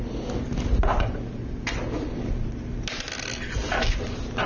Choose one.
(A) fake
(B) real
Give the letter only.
B